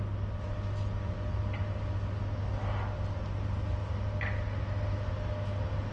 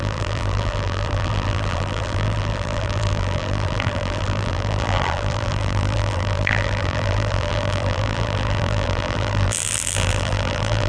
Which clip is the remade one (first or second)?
second